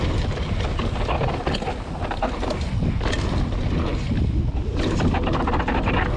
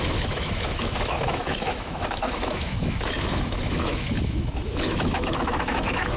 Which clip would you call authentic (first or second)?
first